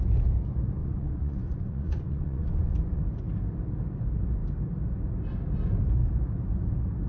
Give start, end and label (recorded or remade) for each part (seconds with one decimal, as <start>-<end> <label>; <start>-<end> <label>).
0.0-0.8 recorded; 0.8-3.0 remade; 3.0-7.1 recorded